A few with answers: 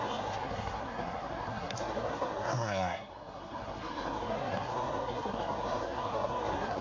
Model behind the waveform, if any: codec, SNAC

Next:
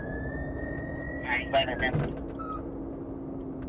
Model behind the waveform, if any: none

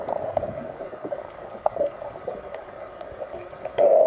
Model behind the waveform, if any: codec, DAC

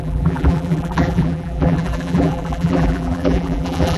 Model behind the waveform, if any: vocoder, BigVGAN v2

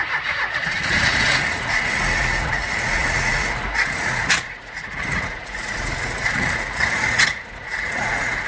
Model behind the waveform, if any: vocoder, Vocos